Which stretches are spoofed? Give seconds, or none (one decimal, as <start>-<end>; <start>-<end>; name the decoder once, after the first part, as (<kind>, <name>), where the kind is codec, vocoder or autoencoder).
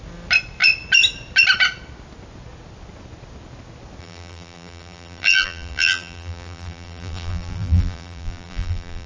4.0-9.1 (vocoder, BigVGAN v2)